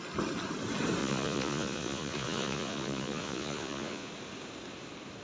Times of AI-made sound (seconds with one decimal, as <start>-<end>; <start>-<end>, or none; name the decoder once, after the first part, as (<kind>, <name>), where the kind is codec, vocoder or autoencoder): 1.0-4.1 (vocoder, Vocos)